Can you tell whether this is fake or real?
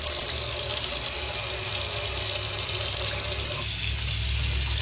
real